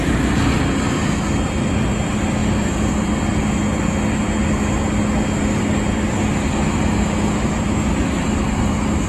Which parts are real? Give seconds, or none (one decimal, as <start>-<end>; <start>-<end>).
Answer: 0.0-9.1